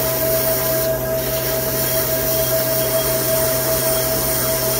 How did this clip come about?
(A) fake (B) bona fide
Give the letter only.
B